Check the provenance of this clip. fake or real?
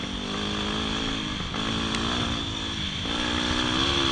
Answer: real